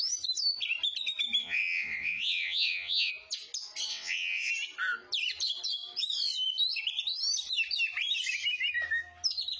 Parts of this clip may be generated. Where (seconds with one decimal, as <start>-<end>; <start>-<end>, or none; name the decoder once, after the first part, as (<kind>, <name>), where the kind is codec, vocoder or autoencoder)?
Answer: 1.4-3.1 (vocoder, WaveNeXt); 3.9-4.5